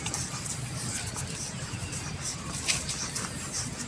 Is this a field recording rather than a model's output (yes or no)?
yes